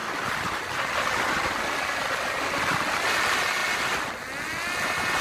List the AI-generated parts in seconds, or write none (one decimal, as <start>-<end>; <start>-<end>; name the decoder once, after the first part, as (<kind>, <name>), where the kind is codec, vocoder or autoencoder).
3.1-3.6 (vocoder, BigVGAN v2); 4.8-5.2